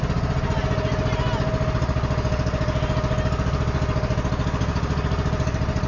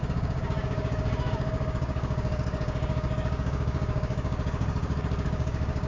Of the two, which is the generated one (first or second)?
second